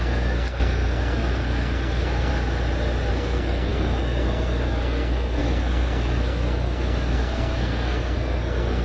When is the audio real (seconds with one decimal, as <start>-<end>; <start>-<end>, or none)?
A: 2.3-3.1